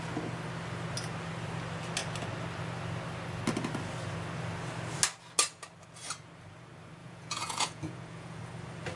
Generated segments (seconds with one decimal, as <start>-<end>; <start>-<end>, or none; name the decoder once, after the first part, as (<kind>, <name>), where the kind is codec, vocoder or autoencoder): 7.0-8.4 (vocoder, Vocos)